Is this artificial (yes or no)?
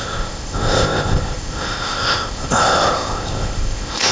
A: yes